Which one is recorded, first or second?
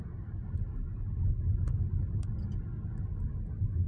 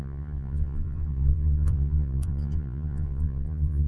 first